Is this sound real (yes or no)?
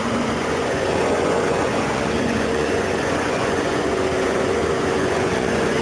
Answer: no